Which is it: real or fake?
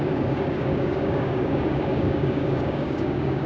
fake